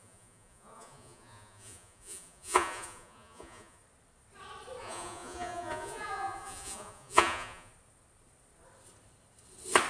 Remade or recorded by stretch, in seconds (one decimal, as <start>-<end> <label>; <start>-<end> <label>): 0.0-3.8 remade; 3.8-4.8 recorded; 4.8-7.7 remade; 7.7-9.9 recorded